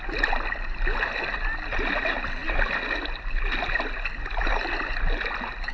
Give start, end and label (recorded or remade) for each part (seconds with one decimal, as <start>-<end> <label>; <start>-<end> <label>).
0.0-5.7 recorded